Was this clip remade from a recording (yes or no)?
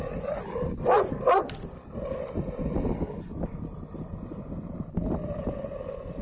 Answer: no